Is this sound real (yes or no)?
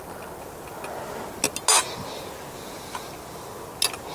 yes